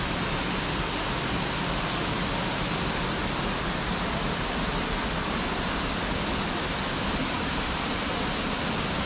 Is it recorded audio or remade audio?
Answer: recorded